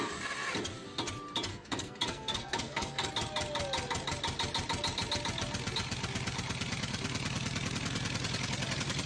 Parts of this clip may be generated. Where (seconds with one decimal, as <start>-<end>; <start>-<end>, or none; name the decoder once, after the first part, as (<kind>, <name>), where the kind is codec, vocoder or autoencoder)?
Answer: 1.5-3.1 (codec, SNAC)